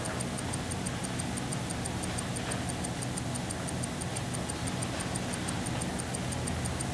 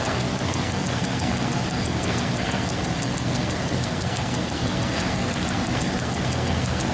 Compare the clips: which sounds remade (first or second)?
second